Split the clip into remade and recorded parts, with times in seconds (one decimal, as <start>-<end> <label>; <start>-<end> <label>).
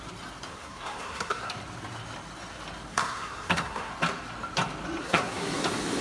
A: 0.0-0.5 recorded; 0.5-1.5 remade; 1.5-2.9 recorded; 2.9-3.9 remade; 3.9-5.0 recorded; 5.0-5.6 remade; 5.6-6.0 recorded